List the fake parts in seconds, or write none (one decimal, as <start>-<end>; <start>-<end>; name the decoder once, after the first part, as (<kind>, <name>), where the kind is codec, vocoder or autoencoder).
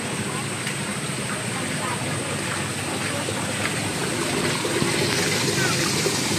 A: none